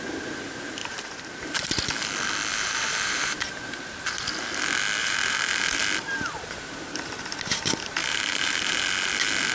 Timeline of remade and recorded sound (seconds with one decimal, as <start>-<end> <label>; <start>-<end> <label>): 0.0-0.8 recorded; 0.8-1.5 remade; 1.5-2.5 recorded; 2.5-3.4 remade; 3.4-5.0 recorded; 5.0-5.6 remade; 5.6-8.0 recorded; 8.0-8.7 remade; 8.7-9.5 recorded

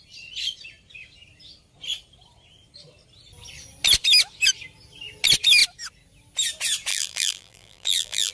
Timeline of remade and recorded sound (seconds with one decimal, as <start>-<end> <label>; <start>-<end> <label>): 0.0-6.9 recorded; 6.9-8.3 remade